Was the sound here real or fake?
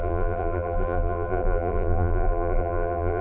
fake